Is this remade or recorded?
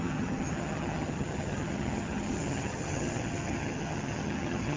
remade